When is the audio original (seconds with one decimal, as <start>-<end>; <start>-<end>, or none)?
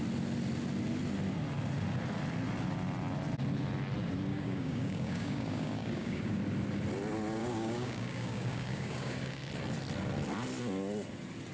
0.0-4.3; 6.4-7.4; 9.5-11.5